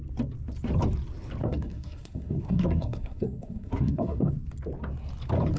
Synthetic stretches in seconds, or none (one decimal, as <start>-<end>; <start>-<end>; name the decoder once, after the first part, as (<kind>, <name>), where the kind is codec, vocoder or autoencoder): 1.4-4.3 (codec, SNAC)